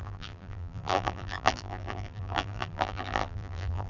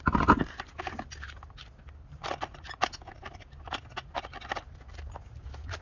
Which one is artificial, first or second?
first